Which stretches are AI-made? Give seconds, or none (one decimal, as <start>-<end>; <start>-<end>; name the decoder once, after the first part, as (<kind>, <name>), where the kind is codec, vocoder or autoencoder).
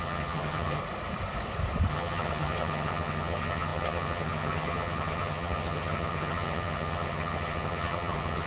0.0-0.8 (vocoder, HiFi-GAN); 1.9-8.5